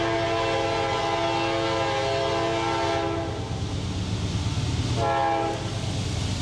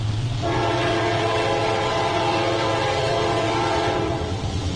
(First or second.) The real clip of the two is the first